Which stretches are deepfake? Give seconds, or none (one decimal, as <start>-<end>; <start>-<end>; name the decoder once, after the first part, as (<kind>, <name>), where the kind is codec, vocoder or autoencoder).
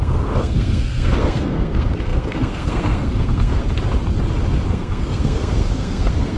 0.0-3.6 (codec, SNAC); 4.7-6.4